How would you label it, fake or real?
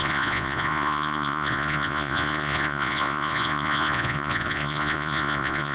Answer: fake